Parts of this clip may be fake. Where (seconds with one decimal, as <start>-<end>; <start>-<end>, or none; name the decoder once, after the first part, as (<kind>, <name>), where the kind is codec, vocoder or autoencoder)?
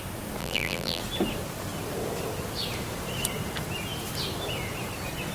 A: 0.4-1.0 (vocoder, BigVGAN v2)